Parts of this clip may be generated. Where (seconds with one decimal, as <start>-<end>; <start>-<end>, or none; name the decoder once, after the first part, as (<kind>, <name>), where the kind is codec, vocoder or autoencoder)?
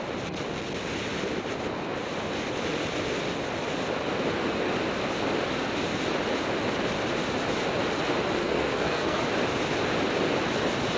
8.4-9.2 (codec, SNAC)